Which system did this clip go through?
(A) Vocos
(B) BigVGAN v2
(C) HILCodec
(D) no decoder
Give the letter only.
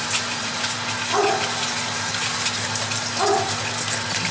D